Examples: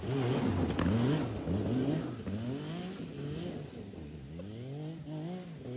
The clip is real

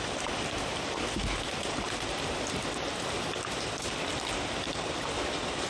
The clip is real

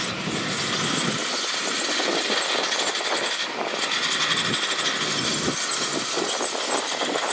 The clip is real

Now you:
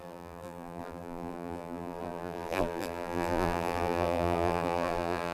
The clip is fake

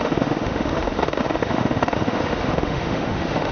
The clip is fake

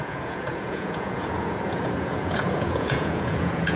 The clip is fake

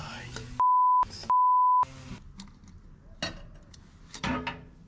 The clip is real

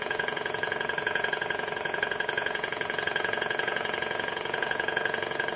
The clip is fake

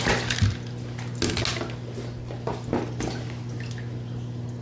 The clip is real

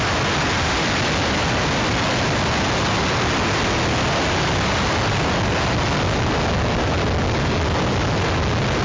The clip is real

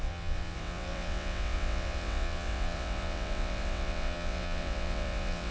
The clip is fake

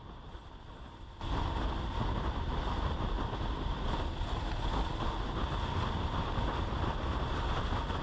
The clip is real